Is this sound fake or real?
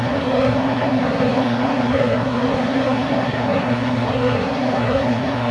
fake